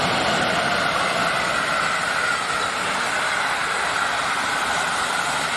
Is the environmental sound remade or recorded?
recorded